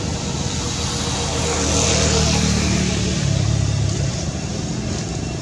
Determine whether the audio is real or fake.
real